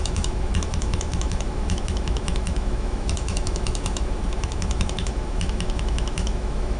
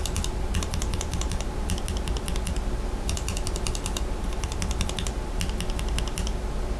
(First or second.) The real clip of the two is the second